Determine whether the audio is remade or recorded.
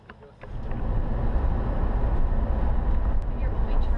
recorded